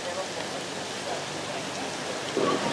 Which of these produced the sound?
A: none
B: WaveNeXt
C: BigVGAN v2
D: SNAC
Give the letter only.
A